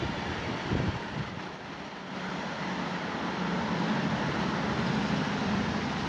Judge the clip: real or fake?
real